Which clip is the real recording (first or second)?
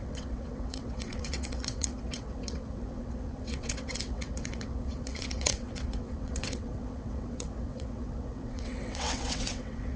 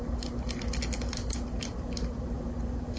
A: second